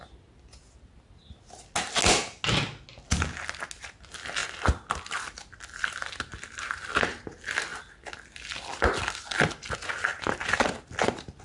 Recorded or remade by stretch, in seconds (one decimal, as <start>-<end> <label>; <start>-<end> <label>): 0.0-11.4 recorded